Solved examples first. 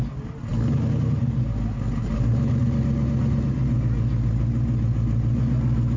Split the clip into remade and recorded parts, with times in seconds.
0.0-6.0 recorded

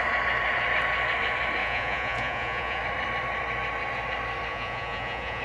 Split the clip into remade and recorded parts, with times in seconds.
0.0-1.6 recorded; 1.6-2.8 remade; 2.8-4.5 recorded; 4.5-5.4 remade

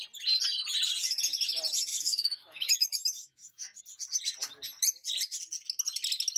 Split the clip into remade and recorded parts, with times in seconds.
0.0-1.9 recorded; 1.9-3.8 remade; 3.8-6.4 recorded